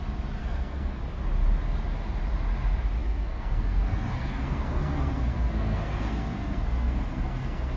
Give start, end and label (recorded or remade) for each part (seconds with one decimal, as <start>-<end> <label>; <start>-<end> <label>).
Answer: 0.0-0.4 recorded; 0.4-1.0 remade; 1.0-3.0 recorded; 3.0-7.8 remade